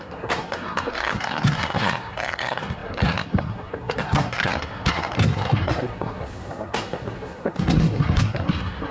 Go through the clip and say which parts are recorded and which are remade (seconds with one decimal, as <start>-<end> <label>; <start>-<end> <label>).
0.0-8.9 remade